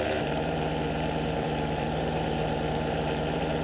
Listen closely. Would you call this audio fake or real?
fake